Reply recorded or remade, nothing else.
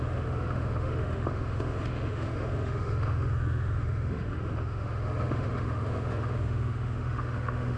remade